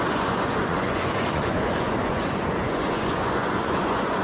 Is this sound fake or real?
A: fake